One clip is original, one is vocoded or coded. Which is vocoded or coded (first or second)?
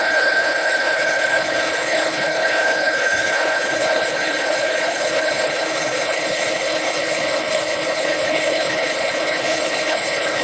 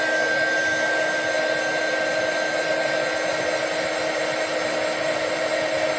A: first